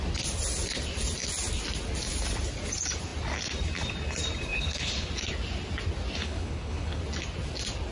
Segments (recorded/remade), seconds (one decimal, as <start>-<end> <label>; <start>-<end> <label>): 0.0-4.5 recorded; 4.5-5.1 remade; 5.1-6.2 recorded; 6.2-7.0 remade; 7.0-7.9 recorded